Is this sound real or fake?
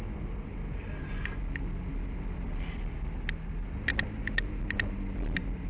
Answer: real